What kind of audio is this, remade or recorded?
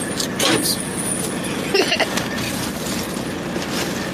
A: recorded